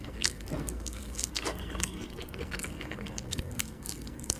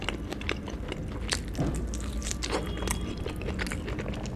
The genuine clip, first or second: second